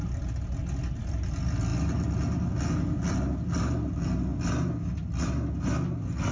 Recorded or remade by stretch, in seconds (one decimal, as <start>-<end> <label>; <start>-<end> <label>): 0.0-6.3 recorded